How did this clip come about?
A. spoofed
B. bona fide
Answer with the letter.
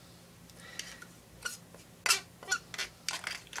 B